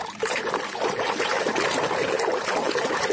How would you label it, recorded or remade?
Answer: remade